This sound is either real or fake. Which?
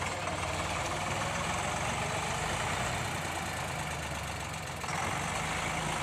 real